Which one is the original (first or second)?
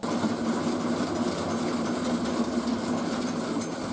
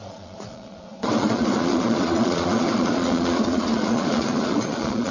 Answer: first